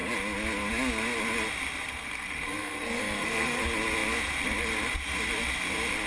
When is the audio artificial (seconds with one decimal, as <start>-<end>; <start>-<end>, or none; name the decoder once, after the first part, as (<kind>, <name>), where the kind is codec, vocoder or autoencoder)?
1.9-3.6 (codec, SNAC)